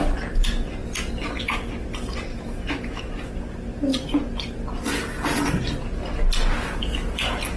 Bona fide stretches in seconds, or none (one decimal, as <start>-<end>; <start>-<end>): 0.0-2.3; 3.1-7.6

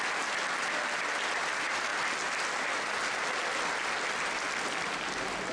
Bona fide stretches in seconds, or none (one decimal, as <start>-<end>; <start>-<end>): 0.0-5.5

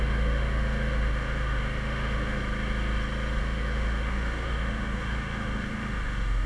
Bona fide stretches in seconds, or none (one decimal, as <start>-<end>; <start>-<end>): 2.4-3.4

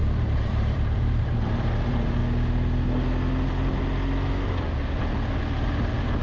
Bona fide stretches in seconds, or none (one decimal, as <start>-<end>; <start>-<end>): 2.2-5.4

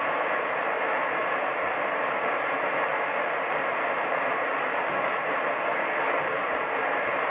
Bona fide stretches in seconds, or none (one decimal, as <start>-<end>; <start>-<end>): 5.7-6.3

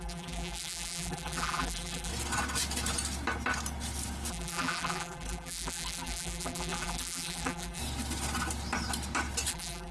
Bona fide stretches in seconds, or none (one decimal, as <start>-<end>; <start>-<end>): 2.1-4.3; 7.8-9.5